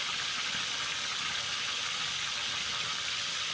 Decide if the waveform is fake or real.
real